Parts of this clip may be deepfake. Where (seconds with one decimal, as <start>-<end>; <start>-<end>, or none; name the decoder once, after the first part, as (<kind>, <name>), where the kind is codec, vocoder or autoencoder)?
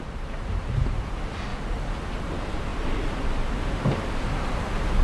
0.0-1.5 (vocoder, BigVGAN v2); 2.3-5.0